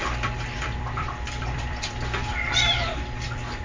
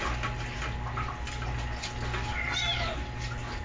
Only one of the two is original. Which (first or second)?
second